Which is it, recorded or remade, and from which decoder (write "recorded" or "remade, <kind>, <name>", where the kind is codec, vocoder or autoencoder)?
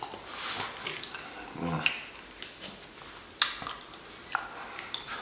recorded